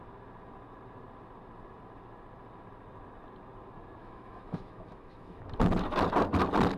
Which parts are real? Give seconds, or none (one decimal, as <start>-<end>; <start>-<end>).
0.0-4.0; 5.4-6.8